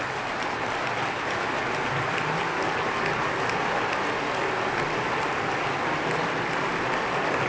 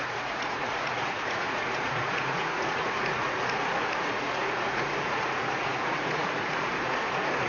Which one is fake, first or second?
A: second